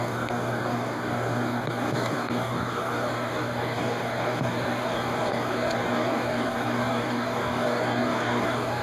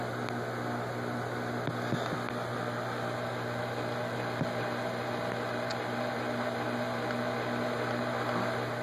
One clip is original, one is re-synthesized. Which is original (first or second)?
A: second